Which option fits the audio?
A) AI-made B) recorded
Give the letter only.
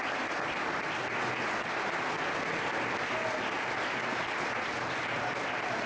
B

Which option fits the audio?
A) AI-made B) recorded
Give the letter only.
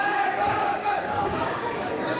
A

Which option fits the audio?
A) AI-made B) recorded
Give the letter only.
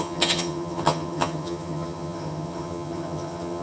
A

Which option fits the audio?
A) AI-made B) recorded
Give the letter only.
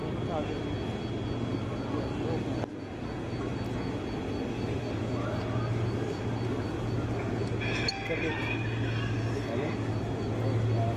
B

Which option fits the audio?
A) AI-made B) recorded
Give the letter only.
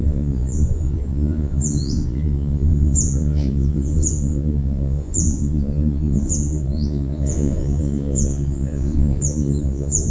A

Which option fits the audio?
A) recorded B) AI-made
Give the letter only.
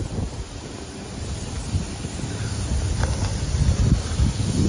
A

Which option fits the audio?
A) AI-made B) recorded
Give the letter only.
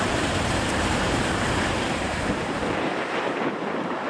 A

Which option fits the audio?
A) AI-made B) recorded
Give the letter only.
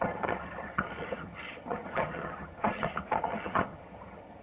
A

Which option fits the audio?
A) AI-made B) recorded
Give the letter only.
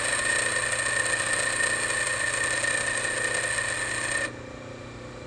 B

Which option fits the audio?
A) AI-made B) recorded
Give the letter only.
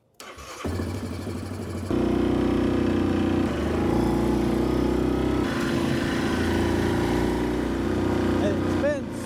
B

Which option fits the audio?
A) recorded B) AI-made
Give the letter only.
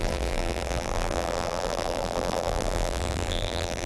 B